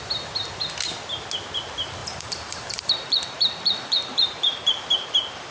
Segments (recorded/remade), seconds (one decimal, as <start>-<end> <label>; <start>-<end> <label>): 0.0-2.0 recorded; 2.0-5.5 remade